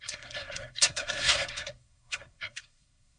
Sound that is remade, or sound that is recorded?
remade